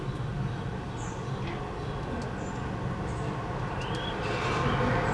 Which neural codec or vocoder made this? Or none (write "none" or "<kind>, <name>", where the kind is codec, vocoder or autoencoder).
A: none